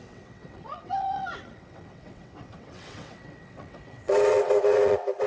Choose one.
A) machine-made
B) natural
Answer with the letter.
A